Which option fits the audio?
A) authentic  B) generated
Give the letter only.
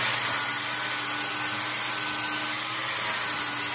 A